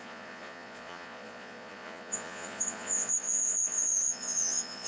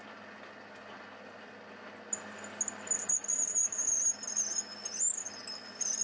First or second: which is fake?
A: first